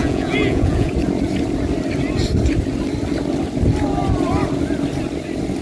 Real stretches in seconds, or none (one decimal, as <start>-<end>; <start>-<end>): 0.9-5.6